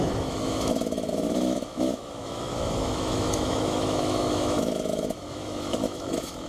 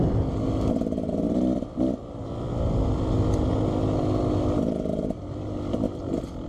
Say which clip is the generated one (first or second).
first